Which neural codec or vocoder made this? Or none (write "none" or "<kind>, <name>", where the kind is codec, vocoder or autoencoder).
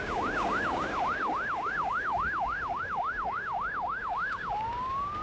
codec, DAC